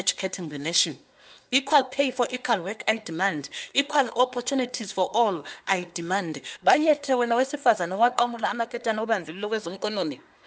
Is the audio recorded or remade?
remade